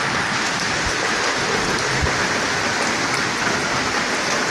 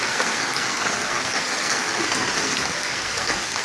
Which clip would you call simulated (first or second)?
second